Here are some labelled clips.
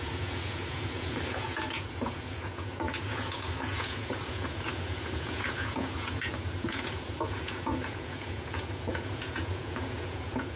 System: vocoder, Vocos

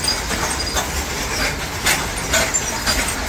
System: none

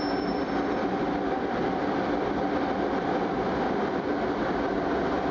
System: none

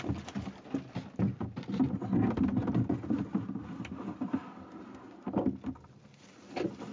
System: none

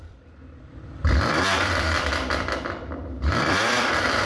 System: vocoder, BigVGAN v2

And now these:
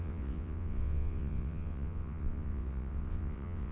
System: vocoder, WaveNeXt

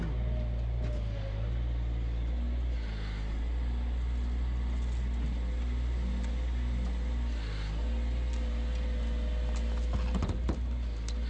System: none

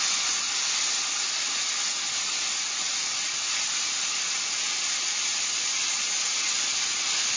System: vocoder, BigVGAN v2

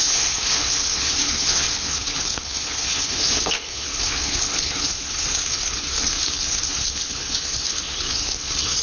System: codec, HILCodec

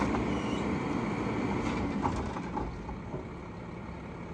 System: none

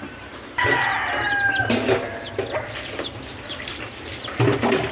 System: none